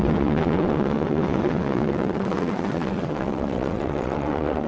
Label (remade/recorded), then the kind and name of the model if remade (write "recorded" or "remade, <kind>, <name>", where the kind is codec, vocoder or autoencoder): remade, vocoder, WaveNeXt